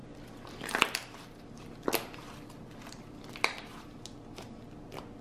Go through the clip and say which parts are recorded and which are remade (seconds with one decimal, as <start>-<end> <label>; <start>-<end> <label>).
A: 0.0-5.2 recorded